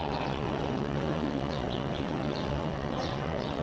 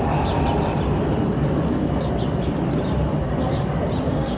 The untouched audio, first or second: second